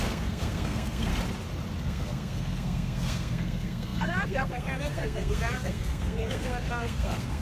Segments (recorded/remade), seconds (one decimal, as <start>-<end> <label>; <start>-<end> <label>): 0.0-1.1 remade; 1.1-1.8 recorded; 1.8-7.4 remade